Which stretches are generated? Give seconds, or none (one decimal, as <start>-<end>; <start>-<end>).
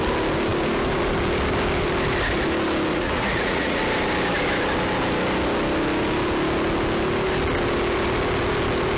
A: 2.9-3.8